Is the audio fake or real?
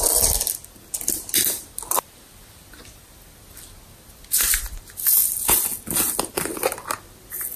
real